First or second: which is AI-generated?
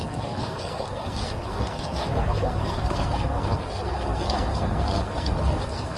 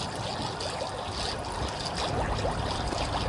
first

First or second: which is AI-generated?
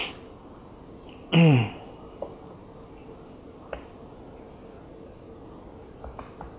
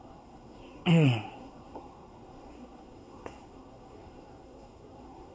second